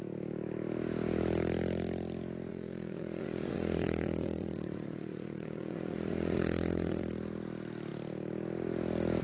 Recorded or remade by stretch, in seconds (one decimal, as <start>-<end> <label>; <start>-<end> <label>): 0.0-2.5 recorded; 2.5-7.0 remade; 7.0-9.2 recorded